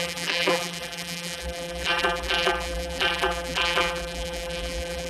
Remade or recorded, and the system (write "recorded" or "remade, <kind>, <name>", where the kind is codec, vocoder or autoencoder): remade, vocoder, BigVGAN v2